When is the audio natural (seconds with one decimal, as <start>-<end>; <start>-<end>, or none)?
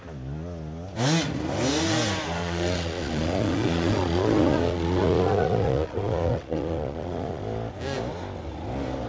0.0-2.4; 7.4-9.1